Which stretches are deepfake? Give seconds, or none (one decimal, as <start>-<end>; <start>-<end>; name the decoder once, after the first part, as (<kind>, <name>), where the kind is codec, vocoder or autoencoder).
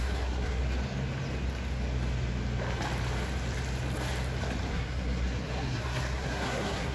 0.0-0.6 (codec, SNAC); 4.7-6.9